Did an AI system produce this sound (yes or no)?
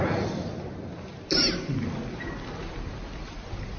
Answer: no